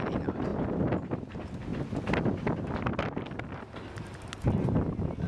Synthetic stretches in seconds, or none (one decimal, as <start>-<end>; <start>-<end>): 0.0-0.5; 1.2-1.7